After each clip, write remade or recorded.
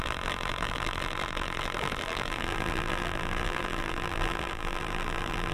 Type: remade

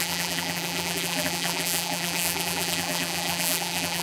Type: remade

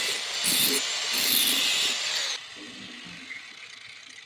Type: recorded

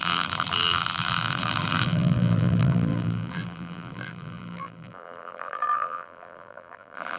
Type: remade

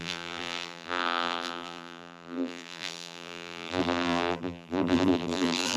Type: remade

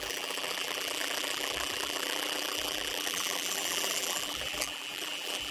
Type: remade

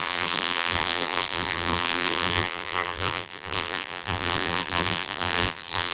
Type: remade